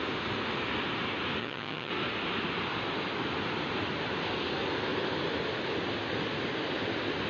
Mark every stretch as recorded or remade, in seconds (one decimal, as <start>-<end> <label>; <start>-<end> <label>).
0.0-1.4 recorded; 1.4-1.9 remade; 1.9-7.3 recorded